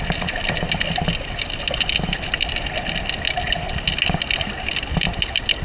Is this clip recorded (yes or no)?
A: yes